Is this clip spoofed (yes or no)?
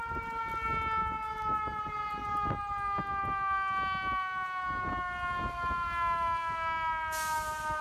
no